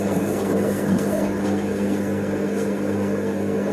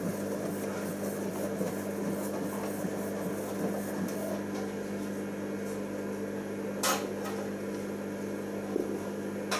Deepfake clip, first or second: first